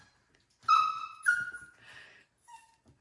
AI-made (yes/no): no